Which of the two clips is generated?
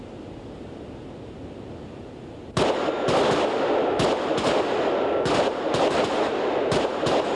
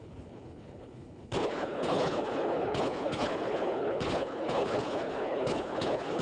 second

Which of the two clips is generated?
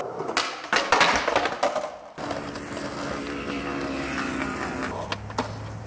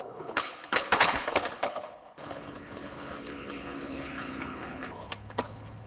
second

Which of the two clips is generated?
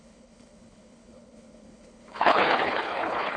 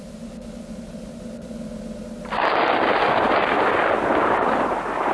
first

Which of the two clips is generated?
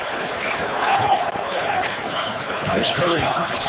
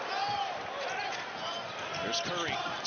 first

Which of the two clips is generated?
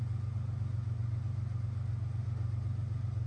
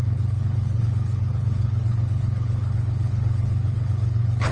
second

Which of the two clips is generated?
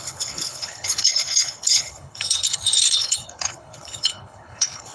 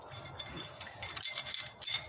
first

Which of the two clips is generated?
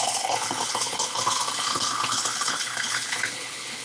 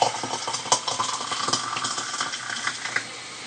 first